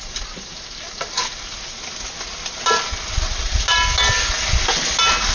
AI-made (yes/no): no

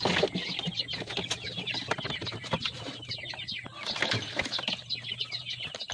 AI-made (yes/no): no